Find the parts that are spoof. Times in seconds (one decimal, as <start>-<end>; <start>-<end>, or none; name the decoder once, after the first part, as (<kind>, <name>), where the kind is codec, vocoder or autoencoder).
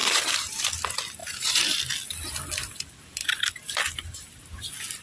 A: 0.0-0.6 (vocoder, BigVGAN v2); 1.2-1.8